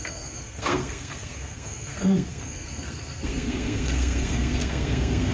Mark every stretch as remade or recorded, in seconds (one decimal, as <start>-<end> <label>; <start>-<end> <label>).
0.0-5.3 remade